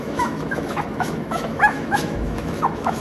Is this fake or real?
fake